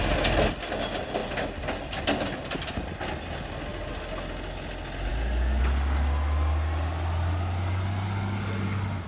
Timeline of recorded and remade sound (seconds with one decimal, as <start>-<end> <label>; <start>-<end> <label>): 0.0-9.1 recorded